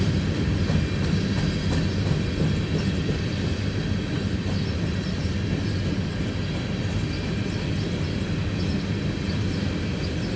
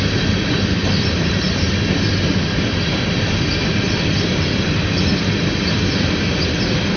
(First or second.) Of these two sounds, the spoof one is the second